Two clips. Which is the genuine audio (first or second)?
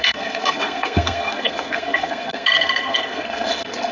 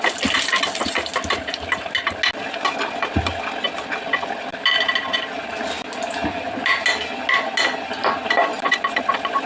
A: second